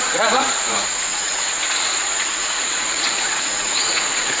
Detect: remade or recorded remade